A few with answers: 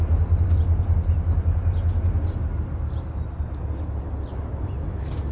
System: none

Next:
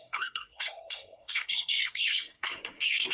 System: codec, SNAC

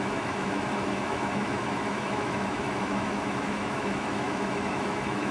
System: autoencoder, DAC-VAE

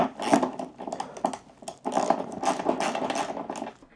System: none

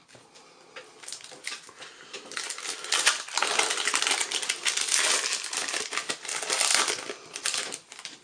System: none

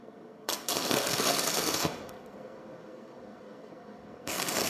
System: codec, SNAC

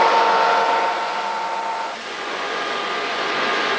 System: vocoder, Vocos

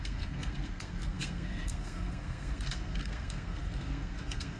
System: codec, SNAC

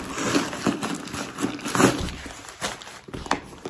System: none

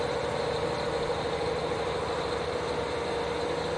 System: none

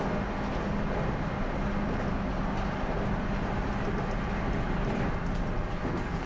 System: none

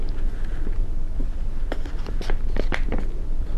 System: none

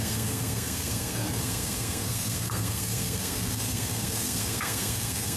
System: codec, SNAC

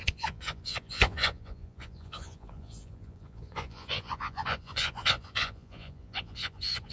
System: vocoder, Vocos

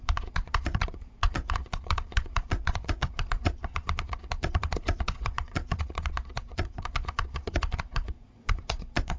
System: vocoder, Vocos